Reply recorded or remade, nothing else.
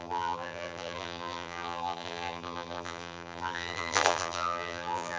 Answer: remade